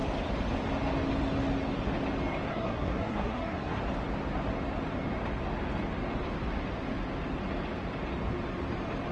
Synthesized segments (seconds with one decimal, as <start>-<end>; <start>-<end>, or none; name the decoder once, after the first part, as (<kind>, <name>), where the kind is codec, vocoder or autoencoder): 2.5-3.8 (codec, SNAC)